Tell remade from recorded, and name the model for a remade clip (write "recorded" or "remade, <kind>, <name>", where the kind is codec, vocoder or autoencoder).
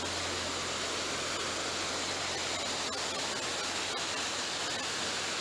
recorded